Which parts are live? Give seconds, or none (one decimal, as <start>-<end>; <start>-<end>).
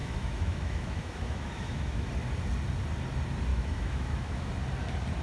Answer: 2.1-3.5; 4.5-5.2